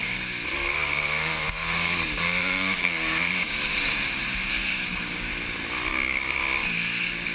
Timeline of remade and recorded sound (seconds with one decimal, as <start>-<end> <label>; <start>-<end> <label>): 0.0-3.7 remade; 3.7-4.5 recorded; 4.5-5.3 remade; 5.3-5.9 recorded; 5.9-7.3 remade